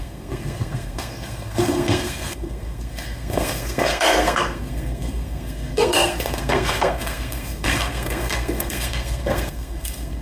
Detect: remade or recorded remade